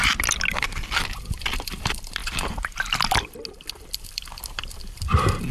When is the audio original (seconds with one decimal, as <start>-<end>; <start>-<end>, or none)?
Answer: 0.0-0.6; 2.2-3.5